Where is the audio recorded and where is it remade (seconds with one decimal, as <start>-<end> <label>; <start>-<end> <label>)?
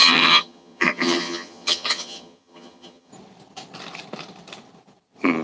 0.0-3.1 remade; 3.1-5.4 recorded